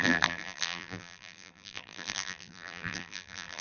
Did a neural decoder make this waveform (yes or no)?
yes